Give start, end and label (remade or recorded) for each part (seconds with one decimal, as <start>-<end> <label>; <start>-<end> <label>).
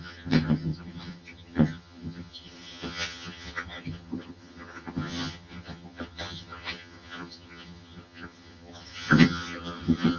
0.0-10.2 remade